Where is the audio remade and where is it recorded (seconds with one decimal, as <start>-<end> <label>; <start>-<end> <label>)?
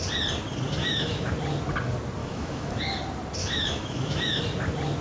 0.0-0.8 recorded; 0.8-1.3 remade; 1.3-2.2 recorded; 2.2-2.8 remade; 2.8-3.4 recorded; 3.4-4.4 remade; 4.4-5.0 recorded